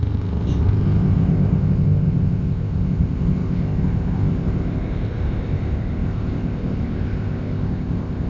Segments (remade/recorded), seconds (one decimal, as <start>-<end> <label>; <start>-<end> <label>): 0.0-8.3 remade